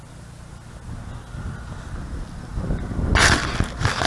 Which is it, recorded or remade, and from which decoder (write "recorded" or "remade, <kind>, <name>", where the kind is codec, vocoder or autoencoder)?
recorded